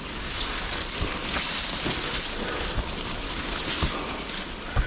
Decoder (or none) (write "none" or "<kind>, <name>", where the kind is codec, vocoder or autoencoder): none